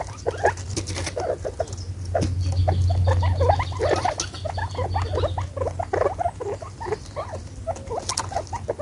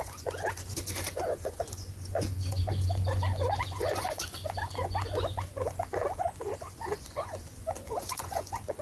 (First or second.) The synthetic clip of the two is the second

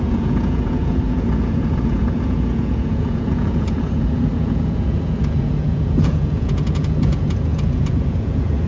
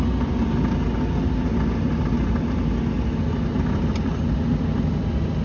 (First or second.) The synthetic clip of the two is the first